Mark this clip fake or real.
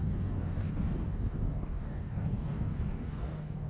fake